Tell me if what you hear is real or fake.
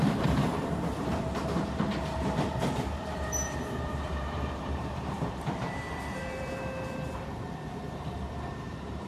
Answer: fake